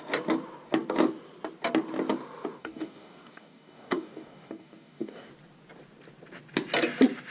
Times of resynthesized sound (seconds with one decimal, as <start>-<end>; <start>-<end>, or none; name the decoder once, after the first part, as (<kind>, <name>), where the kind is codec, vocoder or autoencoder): 2.6-5.3 (codec, DAC)